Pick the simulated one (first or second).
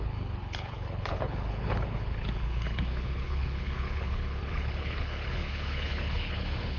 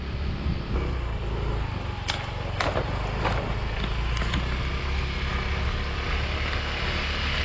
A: first